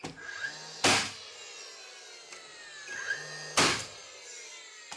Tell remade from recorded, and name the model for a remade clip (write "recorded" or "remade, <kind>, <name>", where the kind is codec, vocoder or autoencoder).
recorded